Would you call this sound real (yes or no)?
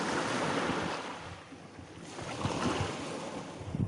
yes